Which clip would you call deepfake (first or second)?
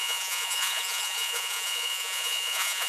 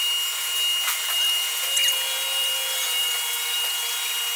first